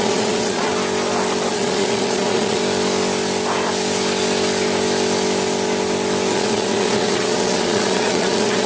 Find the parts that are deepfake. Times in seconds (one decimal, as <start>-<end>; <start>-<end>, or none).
0.0-0.7; 1.5-2.6; 6.3-8.7